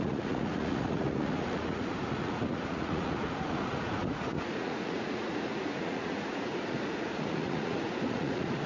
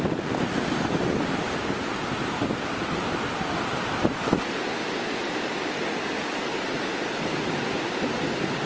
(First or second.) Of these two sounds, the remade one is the first